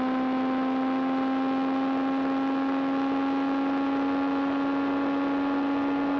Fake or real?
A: real